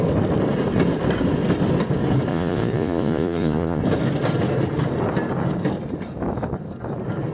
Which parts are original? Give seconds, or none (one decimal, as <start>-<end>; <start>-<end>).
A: 0.0-2.3; 3.8-7.3